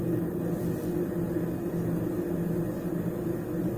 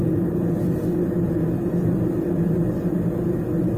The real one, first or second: first